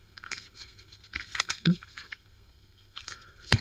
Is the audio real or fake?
fake